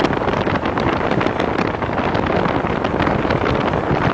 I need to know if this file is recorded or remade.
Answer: recorded